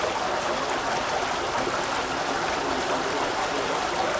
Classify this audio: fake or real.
real